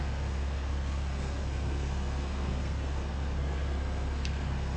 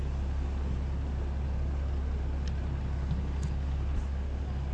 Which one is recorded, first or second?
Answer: second